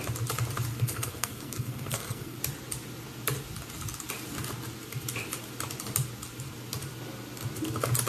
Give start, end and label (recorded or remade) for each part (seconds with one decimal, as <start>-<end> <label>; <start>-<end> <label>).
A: 0.0-0.7 recorded; 0.7-2.4 remade; 2.4-8.1 recorded